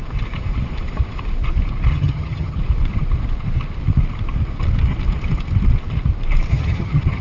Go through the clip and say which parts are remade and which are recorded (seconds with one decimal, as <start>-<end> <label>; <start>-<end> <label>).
0.0-1.9 recorded; 1.9-2.6 remade; 2.6-6.5 recorded; 6.5-7.2 remade